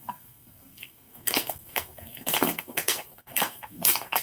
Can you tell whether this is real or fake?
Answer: fake